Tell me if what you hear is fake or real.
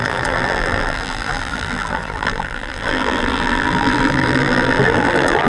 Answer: fake